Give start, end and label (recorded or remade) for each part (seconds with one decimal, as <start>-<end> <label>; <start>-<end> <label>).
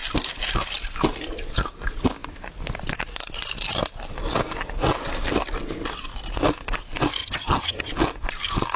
0.0-7.2 recorded; 7.2-7.9 remade; 7.9-8.8 recorded